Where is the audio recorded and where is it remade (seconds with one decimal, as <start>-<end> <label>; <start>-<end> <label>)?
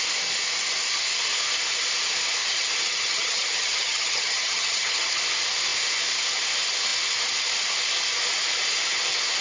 0.0-2.4 recorded; 2.4-5.2 remade; 5.2-9.4 recorded